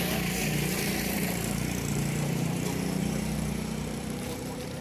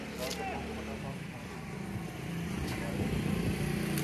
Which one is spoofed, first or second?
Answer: first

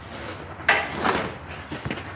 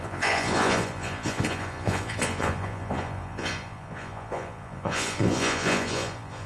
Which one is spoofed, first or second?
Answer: second